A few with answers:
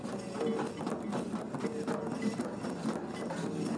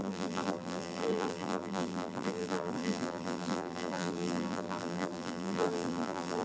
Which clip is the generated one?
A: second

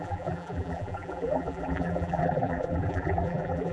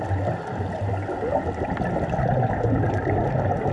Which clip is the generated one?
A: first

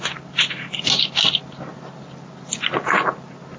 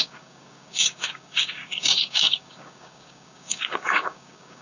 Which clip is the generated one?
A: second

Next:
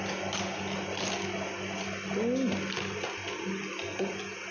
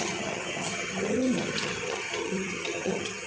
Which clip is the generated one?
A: second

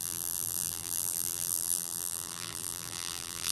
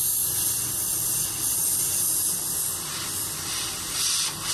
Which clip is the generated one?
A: first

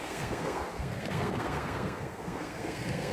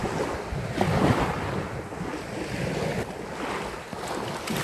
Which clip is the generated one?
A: first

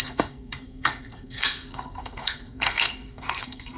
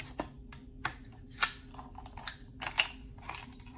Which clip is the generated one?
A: first